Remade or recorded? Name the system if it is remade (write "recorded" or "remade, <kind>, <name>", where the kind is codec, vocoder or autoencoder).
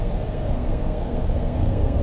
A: remade, codec, SNAC